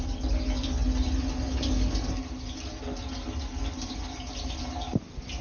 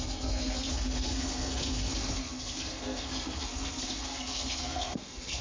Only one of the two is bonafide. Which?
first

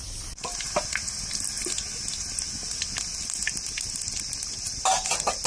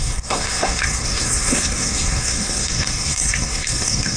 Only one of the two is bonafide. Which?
first